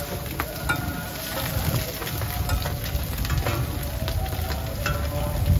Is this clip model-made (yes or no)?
no